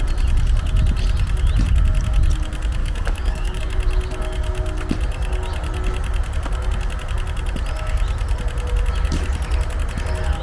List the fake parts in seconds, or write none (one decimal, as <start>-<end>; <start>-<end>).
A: 2.8-3.6